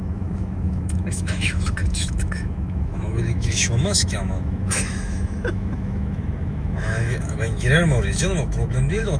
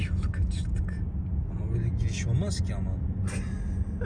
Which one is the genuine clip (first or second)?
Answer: second